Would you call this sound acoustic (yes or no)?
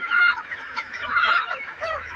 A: no